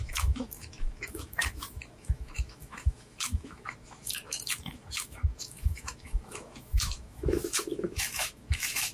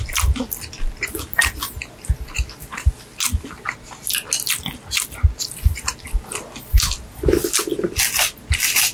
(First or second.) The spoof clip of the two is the first